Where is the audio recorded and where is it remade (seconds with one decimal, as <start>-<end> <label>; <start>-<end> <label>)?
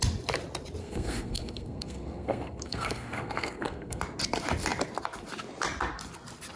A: 0.0-0.8 recorded; 0.8-4.0 remade; 4.0-6.6 recorded